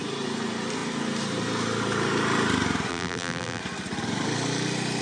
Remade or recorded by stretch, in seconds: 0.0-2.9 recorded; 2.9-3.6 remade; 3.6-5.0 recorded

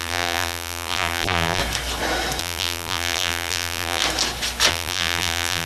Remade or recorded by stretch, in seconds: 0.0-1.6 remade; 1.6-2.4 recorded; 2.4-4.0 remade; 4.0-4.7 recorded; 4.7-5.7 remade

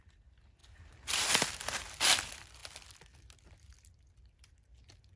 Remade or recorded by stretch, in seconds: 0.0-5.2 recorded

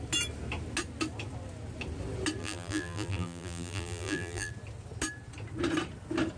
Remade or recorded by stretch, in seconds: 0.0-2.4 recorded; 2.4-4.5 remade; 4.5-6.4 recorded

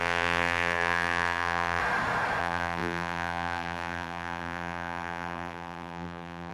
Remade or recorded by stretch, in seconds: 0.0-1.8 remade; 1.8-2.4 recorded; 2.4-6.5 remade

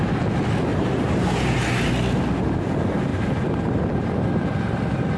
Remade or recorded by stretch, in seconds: 0.0-0.7 recorded; 0.7-1.9 remade; 1.9-3.1 recorded; 3.1-4.1 remade; 4.1-5.2 recorded

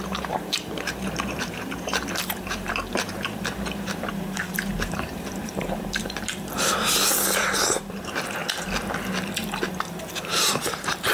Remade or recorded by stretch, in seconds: 0.0-8.4 remade; 8.4-10.2 recorded; 10.2-11.1 remade